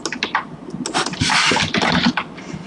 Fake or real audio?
real